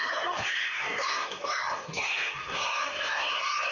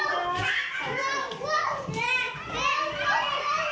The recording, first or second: second